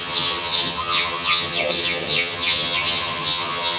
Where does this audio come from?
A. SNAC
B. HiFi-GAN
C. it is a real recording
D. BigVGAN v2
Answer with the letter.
B